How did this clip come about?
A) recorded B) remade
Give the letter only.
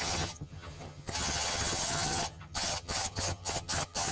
B